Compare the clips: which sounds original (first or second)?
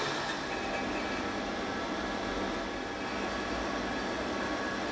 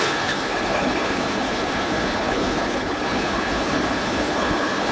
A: first